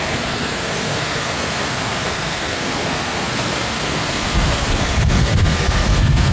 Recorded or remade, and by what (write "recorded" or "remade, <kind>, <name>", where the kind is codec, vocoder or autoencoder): remade, codec, SNAC